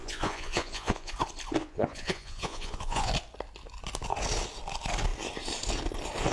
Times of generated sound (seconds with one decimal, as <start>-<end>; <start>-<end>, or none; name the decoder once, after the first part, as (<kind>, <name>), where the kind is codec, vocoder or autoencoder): 0.0-1.1 (vocoder, Vocos); 1.6-3.1

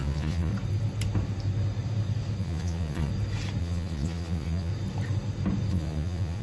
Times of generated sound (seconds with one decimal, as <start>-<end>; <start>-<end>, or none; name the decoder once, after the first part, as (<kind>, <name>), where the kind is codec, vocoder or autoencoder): 0.0-0.5 (vocoder, Vocos); 2.4-3.1; 3.6-4.7; 5.7-6.4